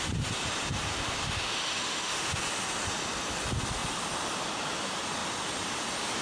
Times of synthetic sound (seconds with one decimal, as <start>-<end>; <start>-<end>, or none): 1.2-2.4